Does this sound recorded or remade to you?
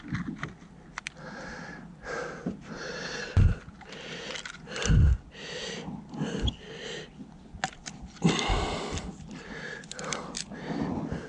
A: recorded